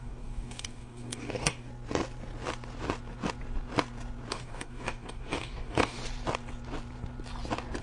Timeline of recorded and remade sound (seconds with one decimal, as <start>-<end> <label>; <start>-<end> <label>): 0.0-1.7 remade; 1.7-4.3 recorded; 4.3-6.0 remade; 6.0-7.8 recorded